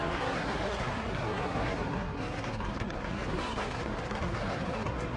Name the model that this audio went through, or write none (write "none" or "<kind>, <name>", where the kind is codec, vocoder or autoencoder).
codec, SNAC